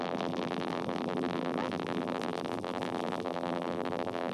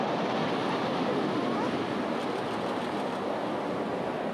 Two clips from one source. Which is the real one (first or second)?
second